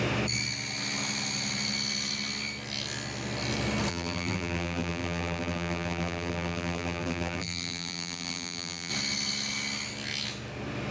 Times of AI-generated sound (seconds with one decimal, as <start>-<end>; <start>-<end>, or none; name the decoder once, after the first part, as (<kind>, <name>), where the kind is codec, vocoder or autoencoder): 3.9-8.9 (vocoder, BigVGAN v2)